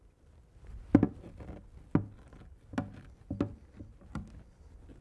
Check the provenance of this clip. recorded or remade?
recorded